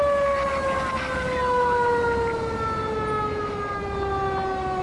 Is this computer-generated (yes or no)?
no